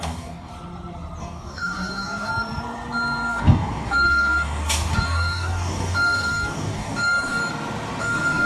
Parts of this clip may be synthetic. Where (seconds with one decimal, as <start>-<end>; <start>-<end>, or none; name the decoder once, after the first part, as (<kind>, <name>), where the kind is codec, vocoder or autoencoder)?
0.0-0.5 (codec, DAC); 1.2-2.3; 3.3-7.4; 8.0-8.5